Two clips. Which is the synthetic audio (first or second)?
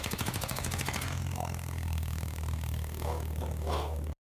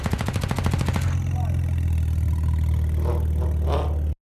first